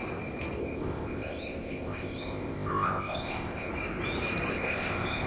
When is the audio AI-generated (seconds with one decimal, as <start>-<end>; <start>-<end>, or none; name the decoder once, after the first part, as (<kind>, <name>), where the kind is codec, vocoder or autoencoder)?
0.6-3.7 (codec, ZipCodec); 4.5-5.3